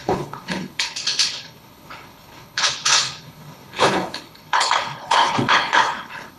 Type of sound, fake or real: fake